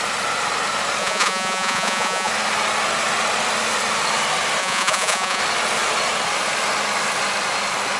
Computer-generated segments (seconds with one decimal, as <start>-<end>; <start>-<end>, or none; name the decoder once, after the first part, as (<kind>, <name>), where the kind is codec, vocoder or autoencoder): 1.0-2.3 (vocoder, Vocos); 4.6-5.4